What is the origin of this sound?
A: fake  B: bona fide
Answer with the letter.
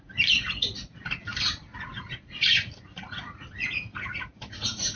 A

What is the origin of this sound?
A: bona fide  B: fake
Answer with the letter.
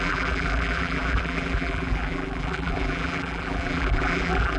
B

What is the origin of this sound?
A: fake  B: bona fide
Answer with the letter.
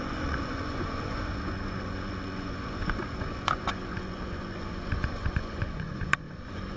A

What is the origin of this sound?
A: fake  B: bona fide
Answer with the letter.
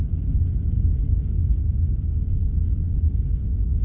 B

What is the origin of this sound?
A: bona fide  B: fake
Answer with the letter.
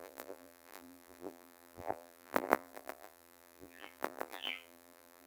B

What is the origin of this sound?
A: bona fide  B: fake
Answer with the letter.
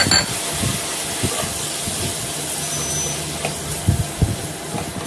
A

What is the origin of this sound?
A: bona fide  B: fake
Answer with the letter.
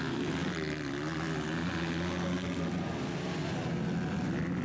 A